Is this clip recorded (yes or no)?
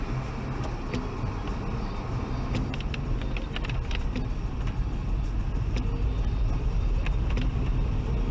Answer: yes